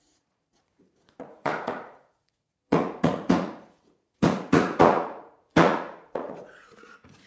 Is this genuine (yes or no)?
no